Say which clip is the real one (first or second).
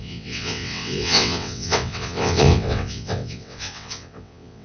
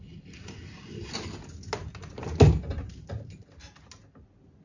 second